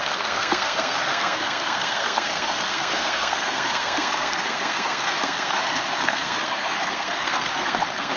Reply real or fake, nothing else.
fake